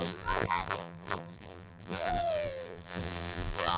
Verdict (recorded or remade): remade